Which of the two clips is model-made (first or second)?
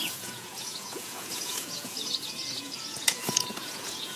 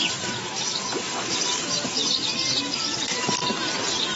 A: first